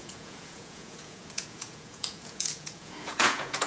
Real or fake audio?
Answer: fake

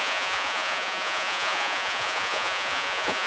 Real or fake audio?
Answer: fake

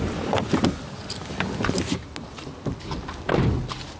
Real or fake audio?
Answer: real